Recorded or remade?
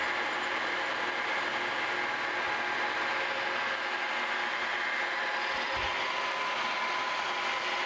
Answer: recorded